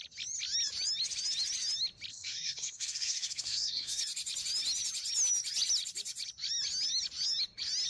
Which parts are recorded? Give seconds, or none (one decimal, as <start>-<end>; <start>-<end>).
0.0-2.1; 4.0-7.9